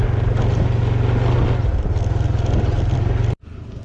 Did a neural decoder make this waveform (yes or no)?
no